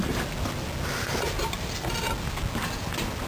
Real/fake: real